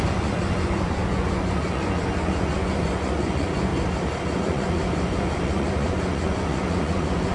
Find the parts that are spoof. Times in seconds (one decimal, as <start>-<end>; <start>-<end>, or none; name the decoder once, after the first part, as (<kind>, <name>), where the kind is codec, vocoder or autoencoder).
0.0-3.7 (vocoder, Vocos); 4.4-7.3